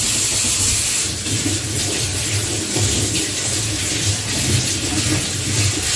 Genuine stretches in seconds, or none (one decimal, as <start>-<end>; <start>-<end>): 0.0-6.0